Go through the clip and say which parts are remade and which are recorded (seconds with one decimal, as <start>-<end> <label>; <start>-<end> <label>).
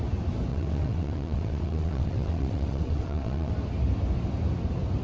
0.0-0.5 recorded; 0.5-3.5 remade; 3.5-5.0 recorded